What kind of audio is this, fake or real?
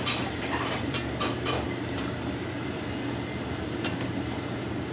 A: fake